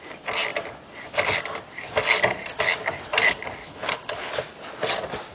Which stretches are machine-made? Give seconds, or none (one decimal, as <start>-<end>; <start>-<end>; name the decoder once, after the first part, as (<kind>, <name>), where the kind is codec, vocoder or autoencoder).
3.6-4.3 (codec, HILCodec)